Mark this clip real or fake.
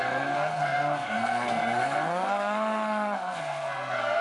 fake